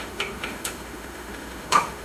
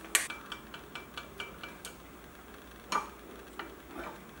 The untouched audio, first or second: second